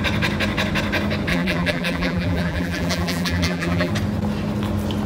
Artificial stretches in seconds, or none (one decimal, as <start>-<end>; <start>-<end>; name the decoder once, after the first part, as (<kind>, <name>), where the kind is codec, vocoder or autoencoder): 1.3-3.9 (vocoder, BigVGAN v2)

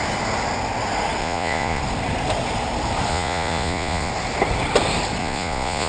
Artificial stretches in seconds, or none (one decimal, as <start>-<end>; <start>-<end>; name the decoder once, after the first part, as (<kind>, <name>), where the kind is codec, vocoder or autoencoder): 1.2-1.8 (vocoder, Vocos); 3.1-4.1; 5.2-5.9